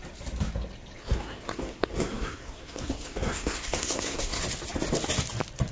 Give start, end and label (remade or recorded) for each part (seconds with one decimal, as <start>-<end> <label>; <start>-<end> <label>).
0.0-1.0 recorded; 1.0-4.4 remade; 4.4-5.7 recorded